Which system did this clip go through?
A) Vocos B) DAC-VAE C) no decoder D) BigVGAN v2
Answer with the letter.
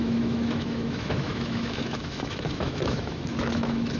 B